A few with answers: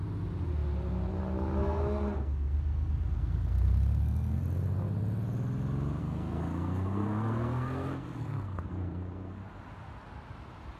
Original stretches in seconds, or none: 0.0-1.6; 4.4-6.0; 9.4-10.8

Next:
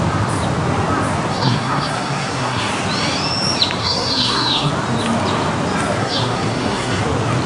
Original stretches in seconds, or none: 0.0-1.3; 2.7-3.8; 4.7-6.0; 7.0-7.5

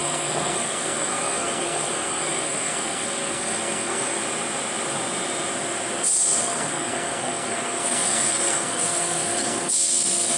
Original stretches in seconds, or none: 4.2-6.4

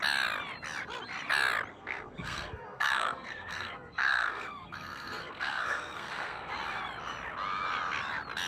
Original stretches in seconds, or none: 0.0-1.7; 6.5-8.5

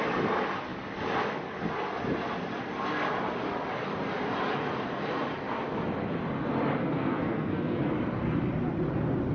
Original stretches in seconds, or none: 0.0-6.8; 7.9-9.3

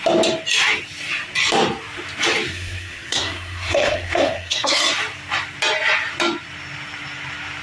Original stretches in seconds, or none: 0.0-2.5; 4.8-7.6

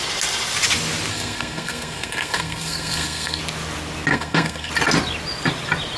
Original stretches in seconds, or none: 0.0-1.1; 3.4-4.1; 4.7-6.0